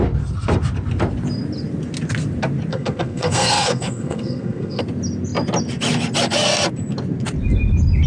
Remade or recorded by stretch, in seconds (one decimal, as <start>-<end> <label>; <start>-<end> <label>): 0.0-2.7 recorded; 2.7-4.8 remade; 4.8-8.1 recorded